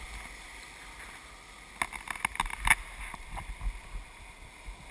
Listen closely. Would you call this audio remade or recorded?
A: recorded